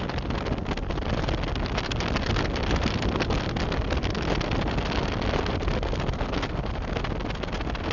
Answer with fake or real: real